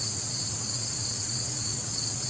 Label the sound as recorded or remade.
remade